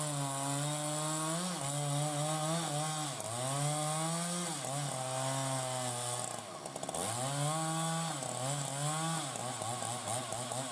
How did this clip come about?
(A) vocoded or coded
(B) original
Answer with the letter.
B